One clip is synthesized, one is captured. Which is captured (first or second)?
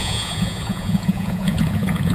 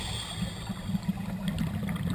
second